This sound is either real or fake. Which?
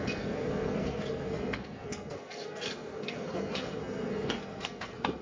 fake